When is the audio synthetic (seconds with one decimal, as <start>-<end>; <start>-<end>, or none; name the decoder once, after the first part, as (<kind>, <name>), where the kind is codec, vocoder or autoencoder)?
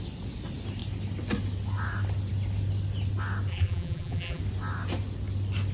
3.5-4.4 (vocoder, BigVGAN v2)